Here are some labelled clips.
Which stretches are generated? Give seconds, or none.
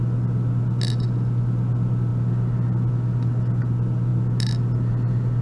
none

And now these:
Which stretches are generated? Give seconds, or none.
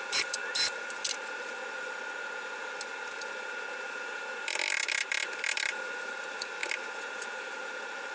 0.0-0.4 (vocoder, BigVGAN v2); 3.9-8.1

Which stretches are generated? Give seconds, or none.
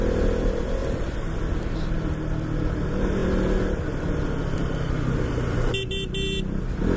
none